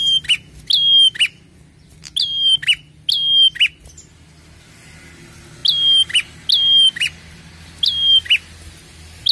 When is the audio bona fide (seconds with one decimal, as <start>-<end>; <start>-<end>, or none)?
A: 0.0-9.3

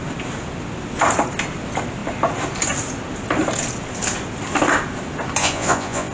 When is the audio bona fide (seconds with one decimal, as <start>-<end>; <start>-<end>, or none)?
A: 0.0-5.4

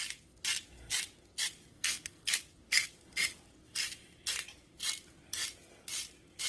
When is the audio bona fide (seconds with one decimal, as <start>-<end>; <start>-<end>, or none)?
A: 0.0-1.7; 2.3-6.5

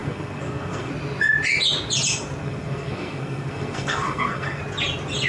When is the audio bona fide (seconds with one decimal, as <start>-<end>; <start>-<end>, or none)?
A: 0.9-2.4; 4.6-5.3

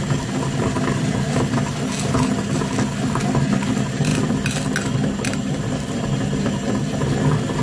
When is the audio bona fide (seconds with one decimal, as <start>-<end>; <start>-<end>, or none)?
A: 0.0-7.6